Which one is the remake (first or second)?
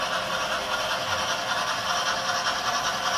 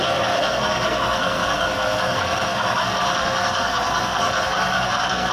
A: second